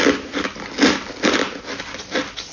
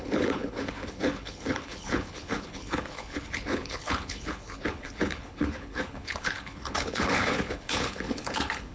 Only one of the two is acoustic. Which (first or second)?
first